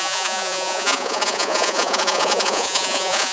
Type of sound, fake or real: fake